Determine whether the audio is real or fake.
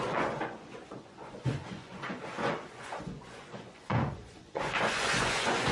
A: fake